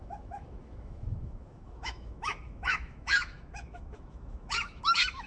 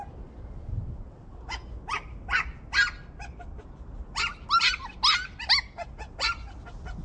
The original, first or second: second